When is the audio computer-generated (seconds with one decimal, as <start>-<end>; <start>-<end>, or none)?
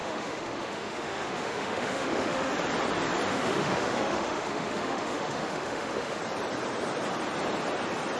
0.0-2.5; 3.3-6.2